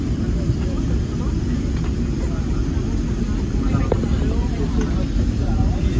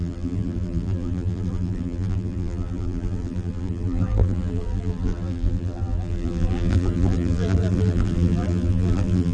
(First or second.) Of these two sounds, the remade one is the second